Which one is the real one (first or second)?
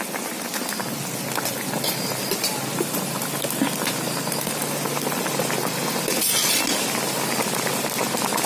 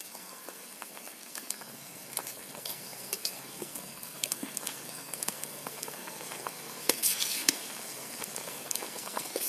first